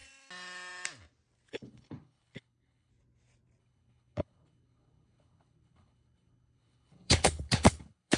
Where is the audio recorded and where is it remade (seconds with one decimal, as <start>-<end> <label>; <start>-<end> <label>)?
0.0-1.5 recorded; 1.5-2.9 remade; 2.9-3.6 recorded; 3.6-8.2 remade